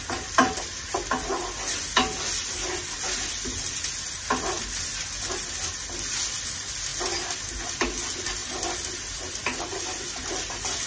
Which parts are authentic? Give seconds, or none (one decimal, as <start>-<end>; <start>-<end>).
0.0-8.4; 10.3-10.9